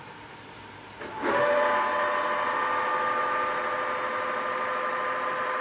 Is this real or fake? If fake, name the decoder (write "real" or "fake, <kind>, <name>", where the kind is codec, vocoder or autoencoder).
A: real